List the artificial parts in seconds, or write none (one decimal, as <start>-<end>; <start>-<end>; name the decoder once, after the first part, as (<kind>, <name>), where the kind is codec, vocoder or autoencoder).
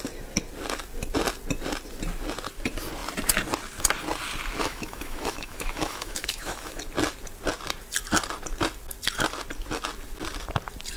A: 4.6-6.8 (autoencoder, DAC-VAE)